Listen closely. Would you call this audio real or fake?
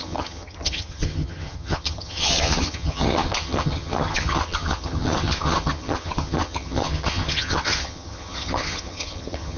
fake